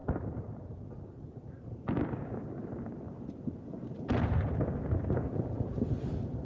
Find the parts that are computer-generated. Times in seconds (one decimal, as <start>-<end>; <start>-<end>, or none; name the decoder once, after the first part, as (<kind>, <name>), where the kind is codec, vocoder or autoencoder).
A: none